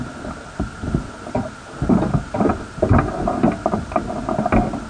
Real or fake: real